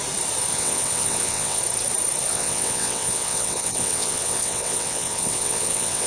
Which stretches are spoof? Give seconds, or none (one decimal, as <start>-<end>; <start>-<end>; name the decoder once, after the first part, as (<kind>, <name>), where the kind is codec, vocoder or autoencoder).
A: 0.5-1.6 (vocoder, WaveNeXt); 2.3-6.1